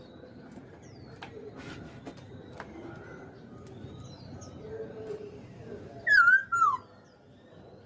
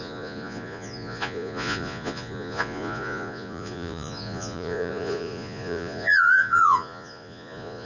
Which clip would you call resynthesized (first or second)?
second